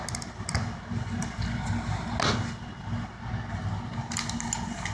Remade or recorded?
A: recorded